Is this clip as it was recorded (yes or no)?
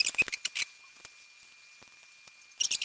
yes